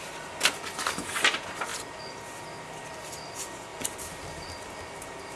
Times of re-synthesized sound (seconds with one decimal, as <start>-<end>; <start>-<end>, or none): 3.7-4.5

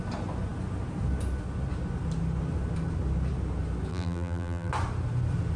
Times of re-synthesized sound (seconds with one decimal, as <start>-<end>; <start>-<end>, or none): 3.9-4.7

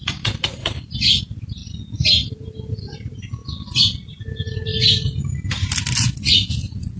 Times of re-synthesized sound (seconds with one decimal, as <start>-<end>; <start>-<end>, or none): 0.0-1.6; 2.3-3.4; 4.1-4.7; 6.6-7.0

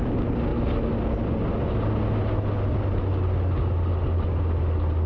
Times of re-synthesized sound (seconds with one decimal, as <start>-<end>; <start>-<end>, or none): none

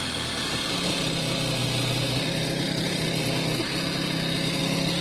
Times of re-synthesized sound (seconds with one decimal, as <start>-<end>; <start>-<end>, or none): none

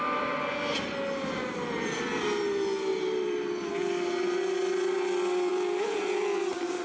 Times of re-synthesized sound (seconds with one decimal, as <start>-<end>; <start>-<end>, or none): 2.9-3.7; 5.5-6.8

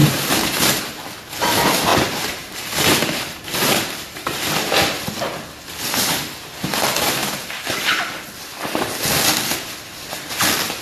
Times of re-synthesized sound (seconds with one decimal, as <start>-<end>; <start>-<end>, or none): 0.0-0.8; 1.9-5.1

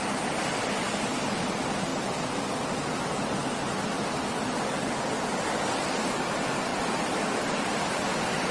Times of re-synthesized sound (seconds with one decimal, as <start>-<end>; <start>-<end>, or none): 6.7-8.0